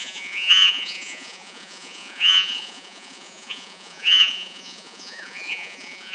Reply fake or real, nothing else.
fake